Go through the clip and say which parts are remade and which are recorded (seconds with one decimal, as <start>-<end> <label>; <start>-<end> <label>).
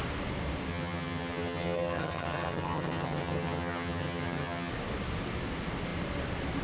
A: 0.0-0.7 recorded; 0.7-4.7 remade; 4.7-6.6 recorded